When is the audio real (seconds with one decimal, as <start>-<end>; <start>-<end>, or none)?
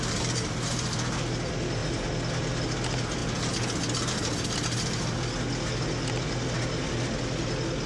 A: 0.0-7.9